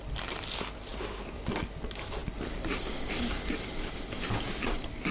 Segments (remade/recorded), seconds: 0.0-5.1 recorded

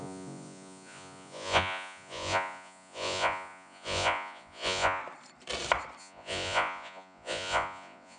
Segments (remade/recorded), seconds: 0.0-5.0 remade; 5.0-6.0 recorded; 6.0-8.2 remade

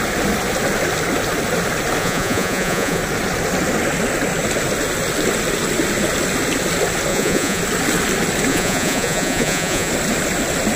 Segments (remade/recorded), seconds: 0.0-2.0 recorded; 2.0-3.0 remade; 3.0-7.1 recorded; 7.1-7.6 remade; 7.6-8.5 recorded; 8.5-9.9 remade; 9.9-10.8 recorded

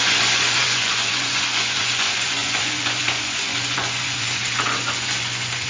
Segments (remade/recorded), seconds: 0.0-5.7 remade